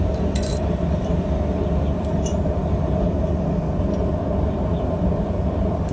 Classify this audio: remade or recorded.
remade